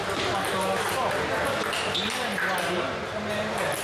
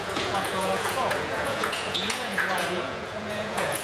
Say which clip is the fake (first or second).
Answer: second